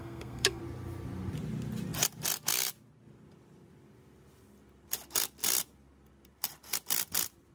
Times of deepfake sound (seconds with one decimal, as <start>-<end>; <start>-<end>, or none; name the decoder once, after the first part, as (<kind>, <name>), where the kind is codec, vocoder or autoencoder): 0.0-0.6 (codec, SNAC)